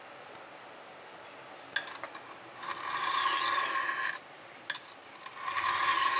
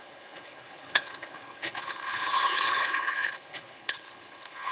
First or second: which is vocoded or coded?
second